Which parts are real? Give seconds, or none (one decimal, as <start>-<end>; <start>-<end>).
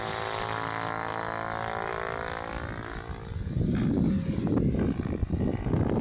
0.0-6.0